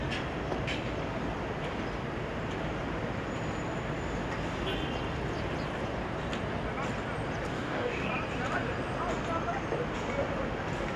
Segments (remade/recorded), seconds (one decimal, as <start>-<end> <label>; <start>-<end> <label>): 0.0-7.5 recorded; 7.5-8.1 remade; 8.1-11.0 recorded

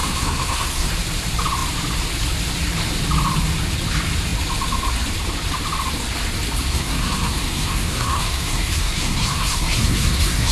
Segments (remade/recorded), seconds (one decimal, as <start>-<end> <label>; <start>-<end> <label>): 0.0-0.9 remade; 0.9-6.7 recorded; 6.7-10.5 remade